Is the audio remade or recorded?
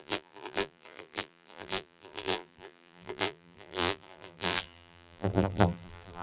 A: remade